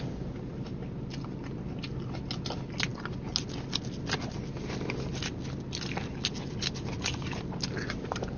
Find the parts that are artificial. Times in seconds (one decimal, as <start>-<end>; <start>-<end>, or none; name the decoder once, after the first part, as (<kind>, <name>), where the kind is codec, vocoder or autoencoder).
none